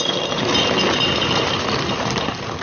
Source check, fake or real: real